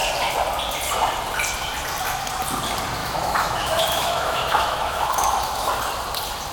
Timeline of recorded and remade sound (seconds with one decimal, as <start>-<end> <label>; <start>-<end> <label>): 0.0-3.0 recorded; 3.0-5.7 remade; 5.7-6.5 recorded